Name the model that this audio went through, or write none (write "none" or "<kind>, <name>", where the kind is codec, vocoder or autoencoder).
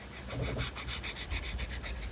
none